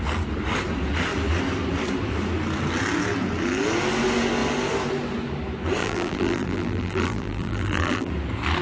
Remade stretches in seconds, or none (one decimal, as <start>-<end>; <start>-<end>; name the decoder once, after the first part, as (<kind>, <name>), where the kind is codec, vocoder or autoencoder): 5.8-8.1 (vocoder, BigVGAN v2)